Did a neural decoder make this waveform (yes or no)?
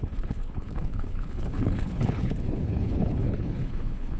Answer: yes